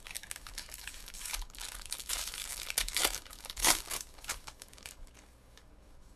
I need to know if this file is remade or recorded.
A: remade